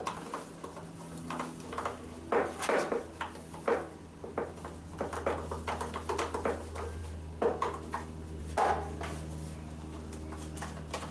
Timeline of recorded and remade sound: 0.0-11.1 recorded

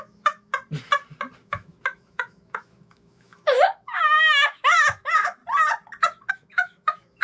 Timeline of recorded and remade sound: 0.0-0.5 remade; 0.5-1.4 recorded; 1.4-5.4 remade; 5.4-6.3 recorded; 6.3-7.2 remade

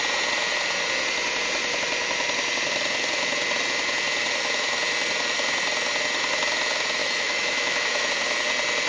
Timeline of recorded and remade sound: 0.0-7.0 recorded; 7.0-8.1 remade; 8.1-8.9 recorded

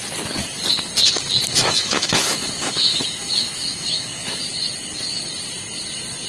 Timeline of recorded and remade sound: 0.0-1.5 recorded; 1.5-4.4 remade; 4.4-6.3 recorded

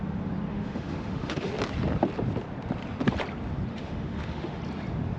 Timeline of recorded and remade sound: 0.0-0.5 recorded; 0.5-1.5 remade; 1.5-3.7 recorded; 3.7-4.6 remade; 4.6-5.2 recorded

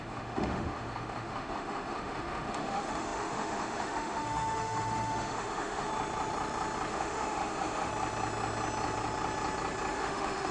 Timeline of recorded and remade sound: 0.0-5.9 remade; 5.9-6.9 recorded; 6.9-7.9 remade; 7.9-9.9 recorded; 9.9-10.5 remade

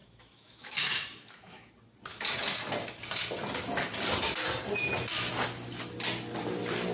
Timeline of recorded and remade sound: 0.0-1.7 remade; 1.7-6.9 recorded

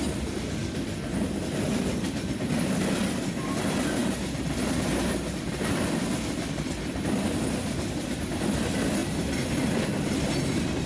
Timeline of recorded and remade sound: 0.0-10.9 recorded